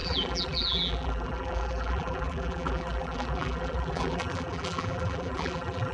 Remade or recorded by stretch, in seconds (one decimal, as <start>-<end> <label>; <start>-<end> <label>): 0.0-5.9 remade

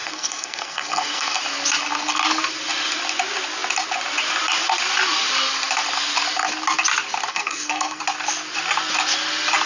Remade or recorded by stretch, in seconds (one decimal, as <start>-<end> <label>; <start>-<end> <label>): 0.0-1.4 remade; 1.4-7.3 recorded; 7.3-8.0 remade; 8.0-9.7 recorded